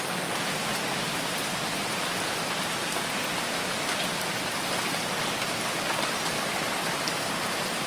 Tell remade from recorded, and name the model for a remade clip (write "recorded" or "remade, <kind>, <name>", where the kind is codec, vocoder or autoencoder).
recorded